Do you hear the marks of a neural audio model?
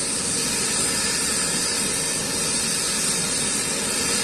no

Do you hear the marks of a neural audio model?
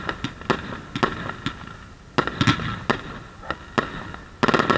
no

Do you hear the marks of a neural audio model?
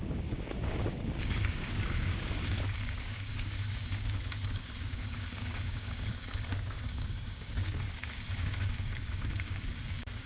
yes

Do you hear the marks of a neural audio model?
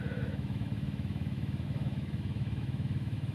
yes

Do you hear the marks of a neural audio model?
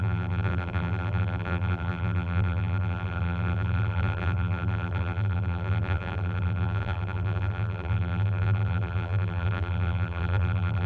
yes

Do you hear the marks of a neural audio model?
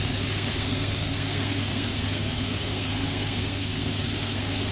yes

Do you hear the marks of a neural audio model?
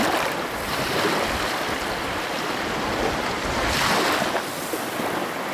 no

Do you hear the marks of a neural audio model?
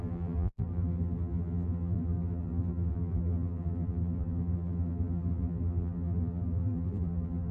yes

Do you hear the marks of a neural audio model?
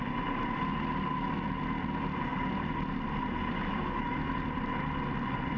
no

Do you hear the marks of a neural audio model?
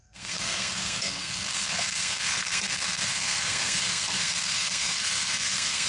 yes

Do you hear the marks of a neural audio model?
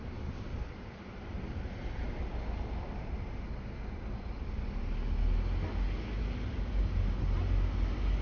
no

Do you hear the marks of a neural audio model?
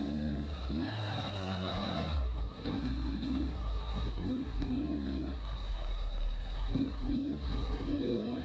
yes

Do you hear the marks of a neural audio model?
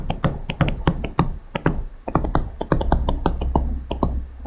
no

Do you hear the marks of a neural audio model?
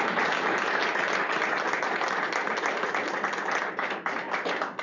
no